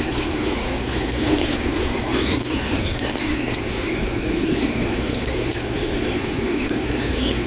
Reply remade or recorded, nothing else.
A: remade